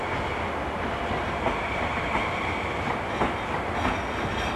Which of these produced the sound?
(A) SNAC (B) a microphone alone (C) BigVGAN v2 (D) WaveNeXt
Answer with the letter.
B